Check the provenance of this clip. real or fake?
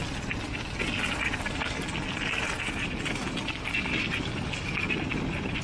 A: real